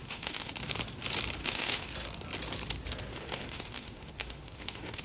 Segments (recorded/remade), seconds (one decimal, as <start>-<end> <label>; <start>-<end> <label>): 0.0-0.5 remade; 0.5-1.4 recorded; 1.4-1.9 remade; 1.9-3.1 recorded; 3.1-5.0 remade